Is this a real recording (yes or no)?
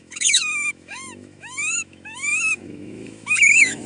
no